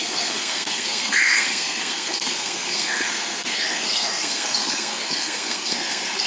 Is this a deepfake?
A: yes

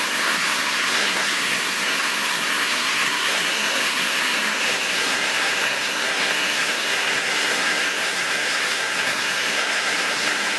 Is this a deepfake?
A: yes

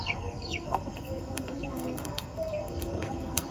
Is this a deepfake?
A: yes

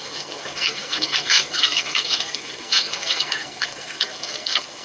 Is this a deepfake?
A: yes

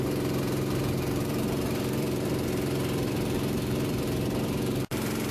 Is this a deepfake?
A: yes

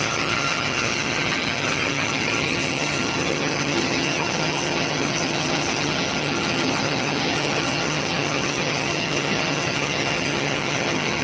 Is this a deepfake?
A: yes